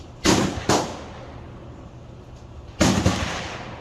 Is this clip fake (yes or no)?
no